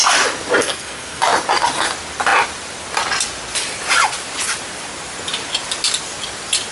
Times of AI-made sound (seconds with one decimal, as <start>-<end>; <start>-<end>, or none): 0.6-1.2